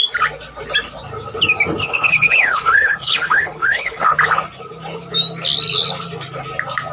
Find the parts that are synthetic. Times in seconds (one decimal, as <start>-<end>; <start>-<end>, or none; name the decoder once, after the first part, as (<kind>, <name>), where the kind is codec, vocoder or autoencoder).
1.8-4.1 (codec, HILCodec)